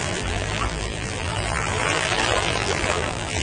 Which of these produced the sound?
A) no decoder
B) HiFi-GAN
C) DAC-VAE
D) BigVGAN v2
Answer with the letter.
D